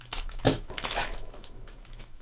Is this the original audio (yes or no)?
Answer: no